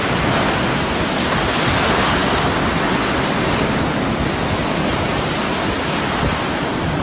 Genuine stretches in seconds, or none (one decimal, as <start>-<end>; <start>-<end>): 0.0-7.0